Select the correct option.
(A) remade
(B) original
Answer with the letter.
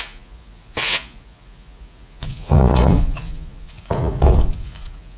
A